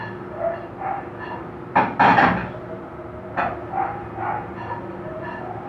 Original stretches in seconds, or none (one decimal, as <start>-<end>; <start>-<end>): 0.0-5.7